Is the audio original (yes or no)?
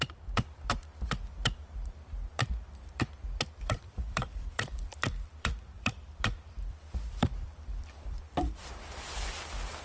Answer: no